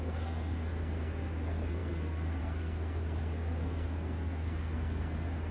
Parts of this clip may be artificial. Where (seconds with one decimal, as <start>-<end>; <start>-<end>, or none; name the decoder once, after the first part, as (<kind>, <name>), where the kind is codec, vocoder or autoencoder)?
0.0-5.5 (codec, SNAC)

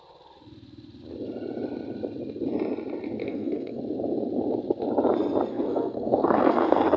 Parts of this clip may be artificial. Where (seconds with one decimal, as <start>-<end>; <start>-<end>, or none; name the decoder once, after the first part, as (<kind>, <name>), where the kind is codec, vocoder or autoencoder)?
3.2-3.8 (codec, SNAC); 5.5-7.0

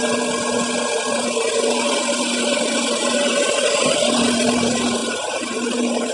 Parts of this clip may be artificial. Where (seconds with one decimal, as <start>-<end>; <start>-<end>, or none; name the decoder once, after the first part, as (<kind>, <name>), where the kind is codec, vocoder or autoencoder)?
none

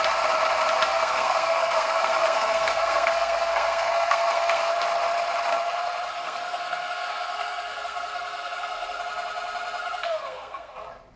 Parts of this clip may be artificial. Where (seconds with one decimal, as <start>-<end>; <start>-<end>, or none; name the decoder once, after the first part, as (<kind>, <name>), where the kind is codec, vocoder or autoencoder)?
0.9-4.7 (codec, SNAC); 6.1-9.0; 9.8-10.7

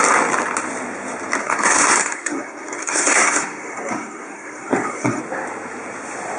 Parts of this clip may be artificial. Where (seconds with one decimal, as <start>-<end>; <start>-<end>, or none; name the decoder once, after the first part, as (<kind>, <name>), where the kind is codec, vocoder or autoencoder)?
1.4-5.2 (codec, SNAC)